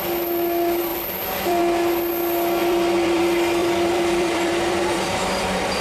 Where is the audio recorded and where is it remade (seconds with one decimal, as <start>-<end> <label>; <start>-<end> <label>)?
0.0-0.9 recorded; 0.9-1.6 remade; 1.6-2.6 recorded; 2.6-3.2 remade; 3.2-3.6 recorded; 3.6-5.1 remade; 5.1-5.8 recorded